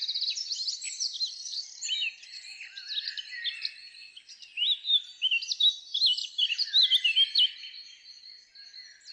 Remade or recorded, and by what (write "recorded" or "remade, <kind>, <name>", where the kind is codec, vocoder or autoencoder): recorded